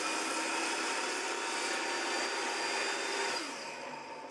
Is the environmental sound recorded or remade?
recorded